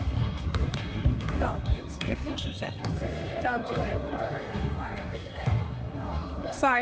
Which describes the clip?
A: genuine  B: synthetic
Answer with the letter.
B